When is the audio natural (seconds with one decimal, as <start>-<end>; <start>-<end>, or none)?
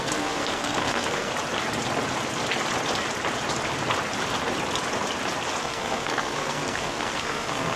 1.3-5.6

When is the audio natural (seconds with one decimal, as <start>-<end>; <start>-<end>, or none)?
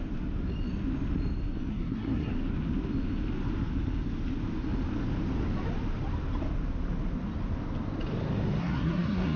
0.0-1.7; 2.3-8.6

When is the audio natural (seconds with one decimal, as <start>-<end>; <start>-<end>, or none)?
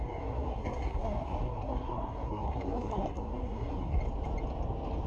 4.0-5.1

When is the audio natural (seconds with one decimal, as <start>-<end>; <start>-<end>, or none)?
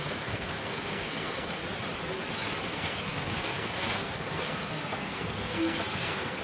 1.6-2.7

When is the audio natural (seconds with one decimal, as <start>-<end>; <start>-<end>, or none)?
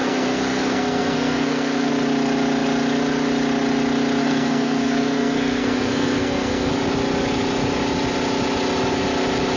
1.9-4.2; 6.7-9.6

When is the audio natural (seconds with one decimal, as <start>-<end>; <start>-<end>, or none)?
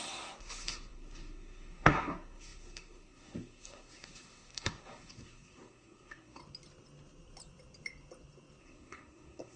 6.4-8.6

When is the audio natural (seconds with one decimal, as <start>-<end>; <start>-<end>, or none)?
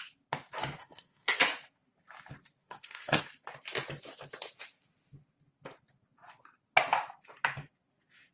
0.0-0.8; 1.4-2.6; 3.2-8.3